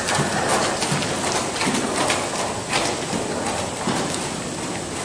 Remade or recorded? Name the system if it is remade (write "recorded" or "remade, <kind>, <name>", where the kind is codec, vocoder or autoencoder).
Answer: recorded